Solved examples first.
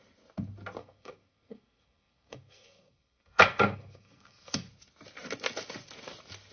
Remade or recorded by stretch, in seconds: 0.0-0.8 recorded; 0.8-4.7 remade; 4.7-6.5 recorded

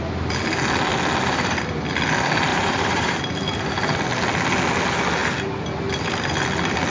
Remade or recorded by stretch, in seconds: 0.0-2.5 recorded; 2.5-3.2 remade; 3.2-6.9 recorded